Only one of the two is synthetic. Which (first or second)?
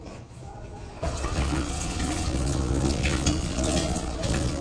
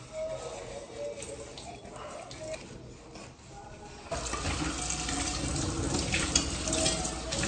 first